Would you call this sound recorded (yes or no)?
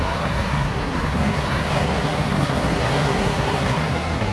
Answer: no